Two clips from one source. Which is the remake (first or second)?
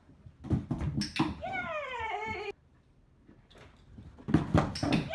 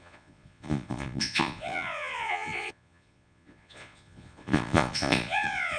second